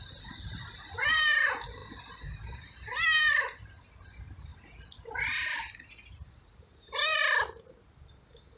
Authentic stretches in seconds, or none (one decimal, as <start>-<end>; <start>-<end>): 4.5-6.1; 7.2-8.6